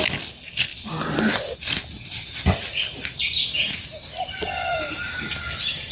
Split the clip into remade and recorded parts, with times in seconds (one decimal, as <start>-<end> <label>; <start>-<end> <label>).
0.0-5.9 recorded

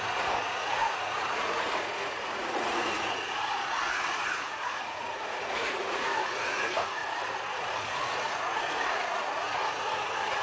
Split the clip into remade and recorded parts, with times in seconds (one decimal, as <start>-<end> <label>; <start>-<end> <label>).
0.0-7.0 remade; 7.0-7.5 recorded; 7.5-10.4 remade

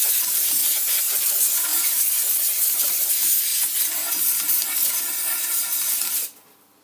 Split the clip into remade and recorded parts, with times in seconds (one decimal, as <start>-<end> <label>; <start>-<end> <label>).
0.0-0.6 remade; 0.6-1.2 recorded; 1.2-3.5 remade; 3.5-5.0 recorded; 5.0-6.8 remade

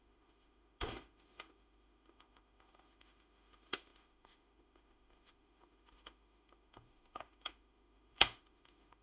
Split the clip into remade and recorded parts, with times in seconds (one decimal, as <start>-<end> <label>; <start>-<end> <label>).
0.0-9.0 remade

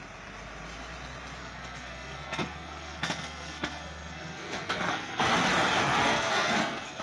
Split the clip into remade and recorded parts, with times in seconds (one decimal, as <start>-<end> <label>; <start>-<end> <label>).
0.0-1.4 recorded; 1.4-5.3 remade; 5.3-5.8 recorded; 5.8-7.0 remade

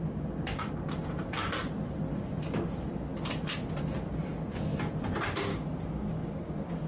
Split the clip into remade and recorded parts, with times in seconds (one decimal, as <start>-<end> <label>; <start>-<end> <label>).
0.0-5.5 recorded; 5.5-6.9 remade

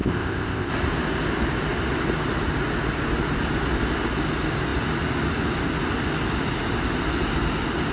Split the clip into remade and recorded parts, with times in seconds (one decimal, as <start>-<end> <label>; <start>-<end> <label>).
0.0-0.7 remade; 0.7-7.9 recorded